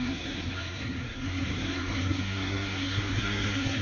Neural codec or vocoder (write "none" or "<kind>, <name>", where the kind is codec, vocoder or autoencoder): codec, SNAC